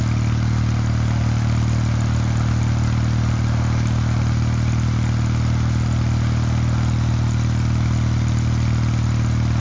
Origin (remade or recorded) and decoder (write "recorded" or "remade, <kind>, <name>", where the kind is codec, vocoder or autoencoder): recorded